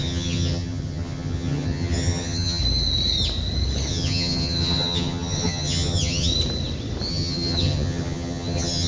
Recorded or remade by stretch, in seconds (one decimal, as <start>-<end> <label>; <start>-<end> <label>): 0.0-2.6 remade; 2.6-3.9 recorded; 3.9-6.3 remade; 6.3-7.1 recorded; 7.1-8.9 remade